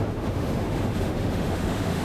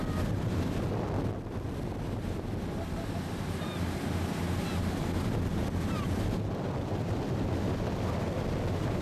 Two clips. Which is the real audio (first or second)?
second